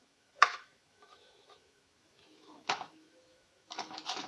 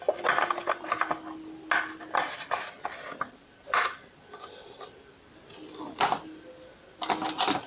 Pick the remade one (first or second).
first